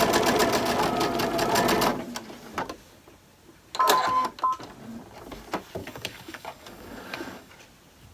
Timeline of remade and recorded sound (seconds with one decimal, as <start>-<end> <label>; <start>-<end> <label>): 0.0-5.8 recorded; 5.8-7.5 remade; 7.5-8.1 recorded